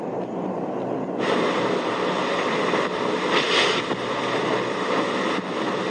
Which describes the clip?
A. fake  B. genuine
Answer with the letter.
B